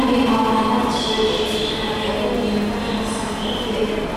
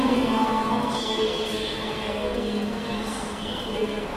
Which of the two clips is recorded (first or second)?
first